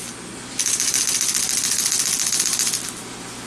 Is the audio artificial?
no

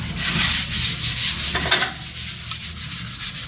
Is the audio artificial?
no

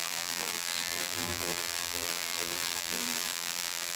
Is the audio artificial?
yes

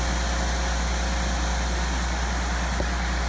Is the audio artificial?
no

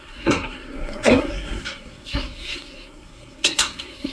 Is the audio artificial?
yes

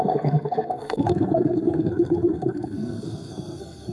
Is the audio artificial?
yes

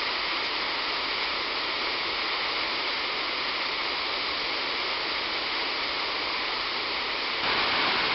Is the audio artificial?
no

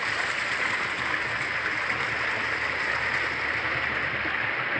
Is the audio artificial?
no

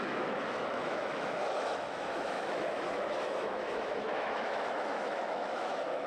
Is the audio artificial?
yes